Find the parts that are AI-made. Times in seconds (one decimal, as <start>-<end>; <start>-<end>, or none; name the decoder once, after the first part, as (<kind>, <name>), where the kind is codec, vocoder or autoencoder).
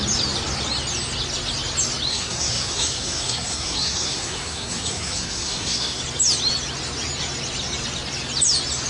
2.1-6.0 (codec, SNAC)